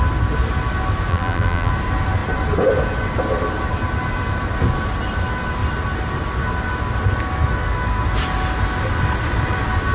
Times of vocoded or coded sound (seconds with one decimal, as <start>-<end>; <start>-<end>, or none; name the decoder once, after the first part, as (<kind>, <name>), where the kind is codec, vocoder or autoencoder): 1.1-1.7 (vocoder, BigVGAN v2)